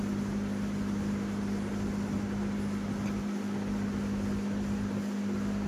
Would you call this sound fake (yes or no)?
no